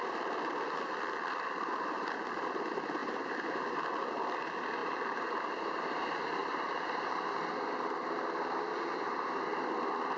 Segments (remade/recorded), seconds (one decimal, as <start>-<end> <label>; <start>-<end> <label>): 0.0-4.8 recorded; 4.8-5.4 remade; 5.4-6.4 recorded; 6.4-7.2 remade; 7.2-10.2 recorded